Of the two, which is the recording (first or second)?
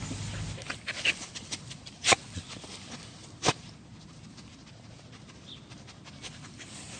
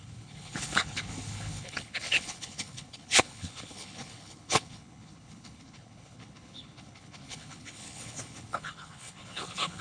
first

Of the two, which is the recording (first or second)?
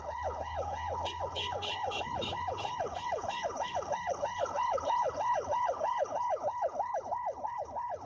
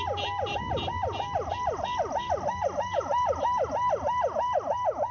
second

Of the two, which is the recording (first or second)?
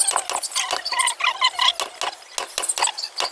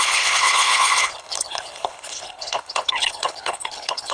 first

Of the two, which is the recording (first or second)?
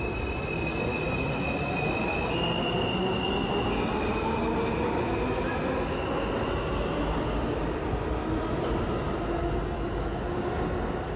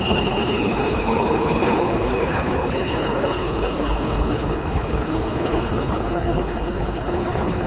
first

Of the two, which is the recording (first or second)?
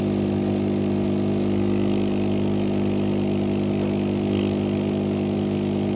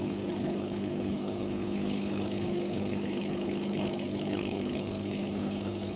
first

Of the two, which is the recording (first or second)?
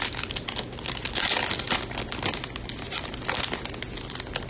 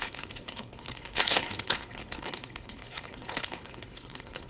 first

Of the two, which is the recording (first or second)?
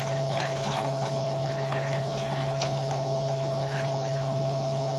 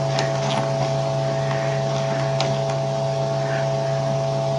second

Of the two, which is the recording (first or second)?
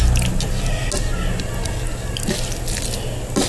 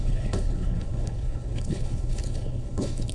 first